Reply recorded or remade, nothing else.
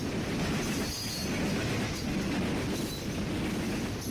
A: recorded